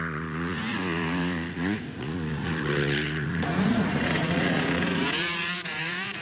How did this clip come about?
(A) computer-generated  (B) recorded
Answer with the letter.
A